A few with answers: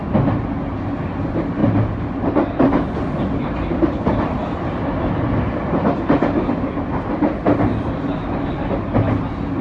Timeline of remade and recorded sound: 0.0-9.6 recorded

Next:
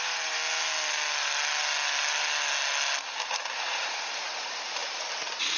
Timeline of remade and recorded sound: 0.0-0.4 remade; 0.4-3.8 recorded; 3.8-5.6 remade